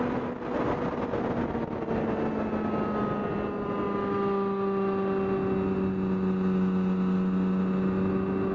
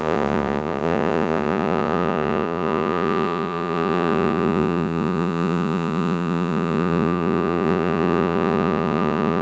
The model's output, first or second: second